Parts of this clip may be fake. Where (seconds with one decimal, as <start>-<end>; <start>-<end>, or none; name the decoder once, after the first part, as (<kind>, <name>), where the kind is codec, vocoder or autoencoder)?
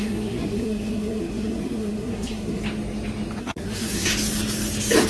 0.0-2.6 (codec, SNAC); 3.4-4.1